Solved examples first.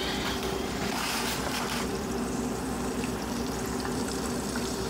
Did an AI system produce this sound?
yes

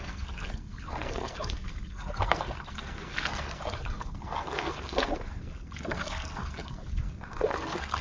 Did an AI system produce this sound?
yes